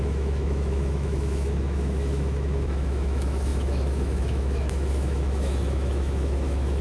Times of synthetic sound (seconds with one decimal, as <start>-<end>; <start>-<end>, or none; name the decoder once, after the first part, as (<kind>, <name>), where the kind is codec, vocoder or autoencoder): 0.0-6.8 (autoencoder, DAC-VAE)